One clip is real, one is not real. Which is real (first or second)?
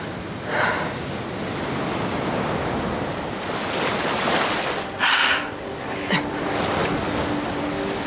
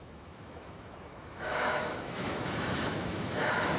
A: first